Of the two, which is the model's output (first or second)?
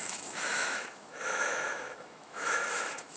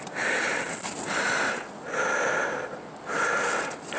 first